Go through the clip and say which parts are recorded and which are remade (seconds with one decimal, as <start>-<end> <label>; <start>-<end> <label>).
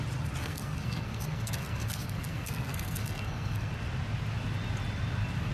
0.0-0.4 recorded; 0.4-3.7 remade; 3.7-5.5 recorded